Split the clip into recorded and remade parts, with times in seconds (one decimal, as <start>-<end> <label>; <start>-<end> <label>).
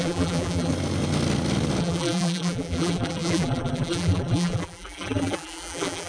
0.0-0.7 remade; 0.7-1.8 recorded; 1.8-6.1 remade